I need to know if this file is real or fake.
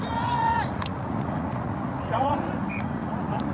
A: fake